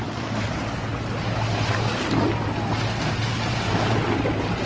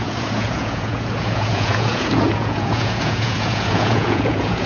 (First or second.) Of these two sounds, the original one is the first